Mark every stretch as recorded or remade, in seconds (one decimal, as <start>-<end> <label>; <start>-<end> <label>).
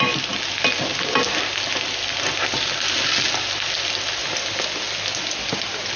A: 0.0-6.0 recorded